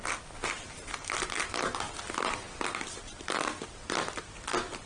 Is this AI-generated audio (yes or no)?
no